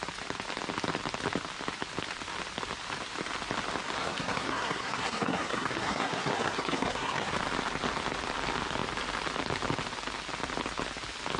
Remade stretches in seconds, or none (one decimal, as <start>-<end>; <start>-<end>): 4.0-7.3